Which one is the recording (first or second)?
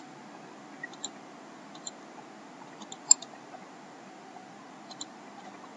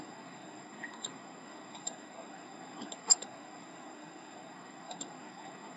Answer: first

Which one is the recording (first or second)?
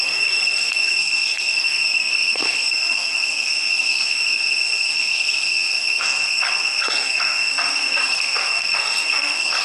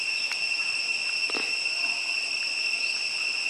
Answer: second